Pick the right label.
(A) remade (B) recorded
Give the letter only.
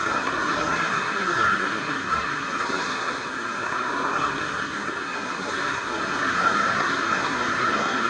A